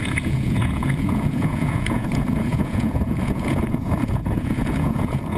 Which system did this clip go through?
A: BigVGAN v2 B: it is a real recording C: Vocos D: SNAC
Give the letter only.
C